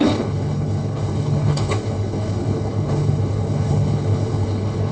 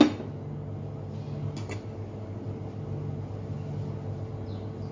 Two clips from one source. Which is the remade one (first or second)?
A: first